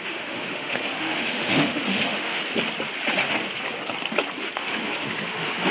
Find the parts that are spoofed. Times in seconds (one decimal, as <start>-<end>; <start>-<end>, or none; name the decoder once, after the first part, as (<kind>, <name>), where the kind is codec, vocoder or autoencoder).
0.0-2.4 (autoencoder, DAC-VAE); 4.5-5.7